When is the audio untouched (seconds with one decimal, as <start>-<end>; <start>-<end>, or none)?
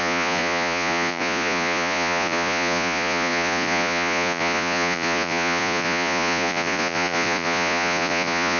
none